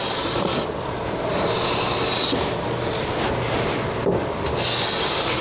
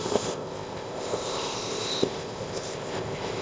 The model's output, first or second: second